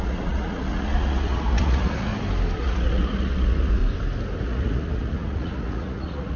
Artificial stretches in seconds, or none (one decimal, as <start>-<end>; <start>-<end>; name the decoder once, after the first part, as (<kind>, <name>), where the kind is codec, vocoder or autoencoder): 0.0-2.1 (vocoder, Vocos); 2.6-3.8; 4.4-6.4